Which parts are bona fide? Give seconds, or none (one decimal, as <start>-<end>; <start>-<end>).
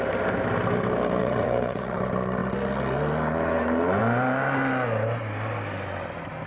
0.0-1.2; 2.0-6.5